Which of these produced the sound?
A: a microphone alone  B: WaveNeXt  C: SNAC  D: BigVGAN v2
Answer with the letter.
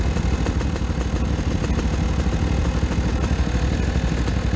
A